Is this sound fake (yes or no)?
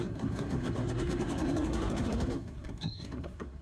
yes